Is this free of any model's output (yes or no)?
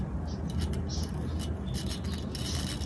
yes